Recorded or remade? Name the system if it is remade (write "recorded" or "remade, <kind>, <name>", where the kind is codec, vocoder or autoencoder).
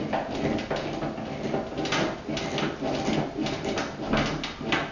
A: recorded